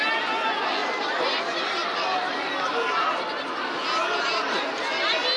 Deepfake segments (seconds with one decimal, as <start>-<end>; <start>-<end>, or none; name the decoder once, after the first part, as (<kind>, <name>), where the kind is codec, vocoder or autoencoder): 0.8-1.4 (vocoder, BigVGAN v2); 1.8-5.0